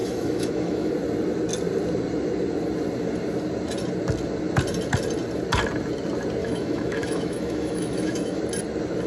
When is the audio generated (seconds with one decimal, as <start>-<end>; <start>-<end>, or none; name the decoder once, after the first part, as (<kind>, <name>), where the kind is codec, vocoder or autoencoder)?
0.0-0.9 (autoencoder, DAC-VAE); 6.4-8.4